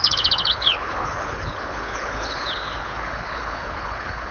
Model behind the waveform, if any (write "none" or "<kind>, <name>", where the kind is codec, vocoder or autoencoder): codec, HILCodec